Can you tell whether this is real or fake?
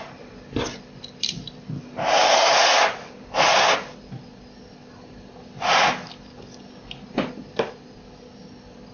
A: real